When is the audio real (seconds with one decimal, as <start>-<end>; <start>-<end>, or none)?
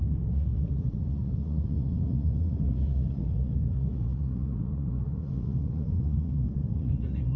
none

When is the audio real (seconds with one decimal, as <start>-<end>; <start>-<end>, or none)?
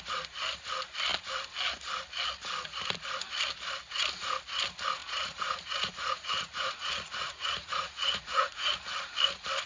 0.0-5.0; 8.7-9.7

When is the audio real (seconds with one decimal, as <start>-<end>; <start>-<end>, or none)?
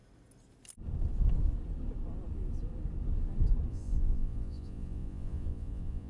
0.0-3.7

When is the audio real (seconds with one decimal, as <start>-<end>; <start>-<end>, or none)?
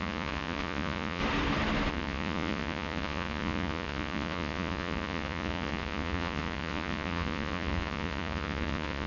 1.2-1.9